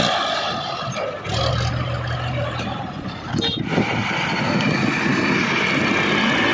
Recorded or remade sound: recorded